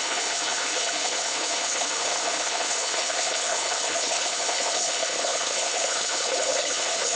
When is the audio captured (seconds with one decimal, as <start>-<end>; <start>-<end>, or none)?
none